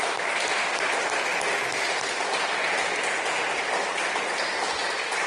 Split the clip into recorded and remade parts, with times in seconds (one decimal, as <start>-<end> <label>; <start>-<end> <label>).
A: 0.0-5.3 recorded